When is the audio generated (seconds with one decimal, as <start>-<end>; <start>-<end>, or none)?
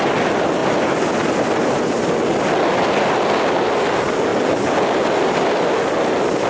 none